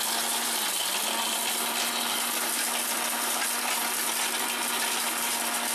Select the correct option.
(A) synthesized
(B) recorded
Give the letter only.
B